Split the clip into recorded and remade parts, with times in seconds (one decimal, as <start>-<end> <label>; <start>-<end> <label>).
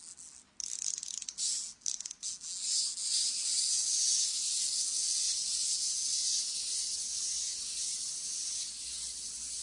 0.0-9.6 recorded